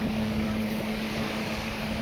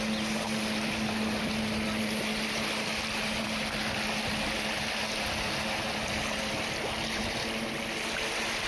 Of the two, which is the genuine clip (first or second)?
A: second